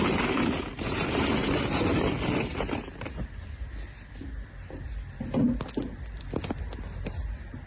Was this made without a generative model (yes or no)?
yes